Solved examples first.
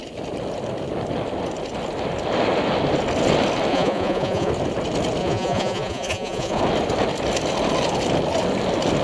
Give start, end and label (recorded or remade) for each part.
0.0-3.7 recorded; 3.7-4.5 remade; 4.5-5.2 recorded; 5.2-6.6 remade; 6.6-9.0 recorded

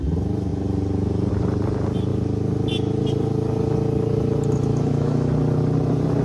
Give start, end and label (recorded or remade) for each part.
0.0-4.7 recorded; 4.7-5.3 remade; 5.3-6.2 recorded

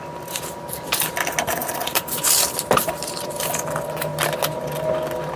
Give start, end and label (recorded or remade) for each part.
0.0-1.6 recorded; 1.6-3.4 remade; 3.4-5.4 recorded

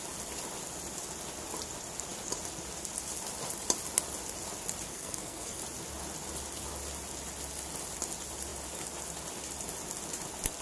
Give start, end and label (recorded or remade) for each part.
0.0-4.9 recorded; 4.9-5.6 remade; 5.6-10.6 recorded

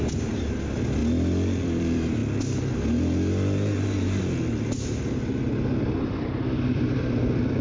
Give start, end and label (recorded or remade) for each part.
0.0-1.0 remade; 1.0-1.6 recorded; 1.6-2.2 remade; 2.2-5.0 recorded; 5.0-7.6 remade